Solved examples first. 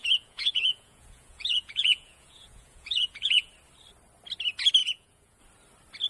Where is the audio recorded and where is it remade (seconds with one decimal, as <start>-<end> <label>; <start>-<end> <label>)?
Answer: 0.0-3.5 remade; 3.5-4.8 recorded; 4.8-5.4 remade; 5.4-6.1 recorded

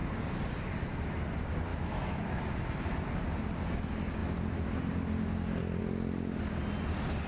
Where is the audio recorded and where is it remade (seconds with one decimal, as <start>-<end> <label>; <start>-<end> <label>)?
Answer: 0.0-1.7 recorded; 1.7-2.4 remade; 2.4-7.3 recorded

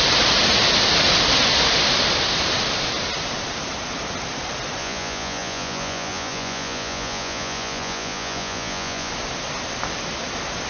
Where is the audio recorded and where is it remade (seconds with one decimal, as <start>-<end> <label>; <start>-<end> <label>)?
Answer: 0.0-4.8 recorded; 4.8-9.1 remade; 9.1-10.7 recorded